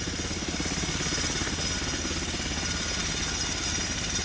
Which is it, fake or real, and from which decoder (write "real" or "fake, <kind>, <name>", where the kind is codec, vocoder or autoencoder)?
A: real